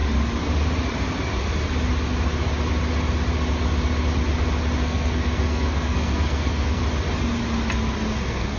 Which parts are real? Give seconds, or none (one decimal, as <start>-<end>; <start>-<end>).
0.0-4.8; 6.8-8.2